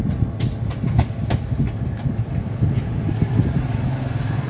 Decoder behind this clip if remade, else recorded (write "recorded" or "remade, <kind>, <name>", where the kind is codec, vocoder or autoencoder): recorded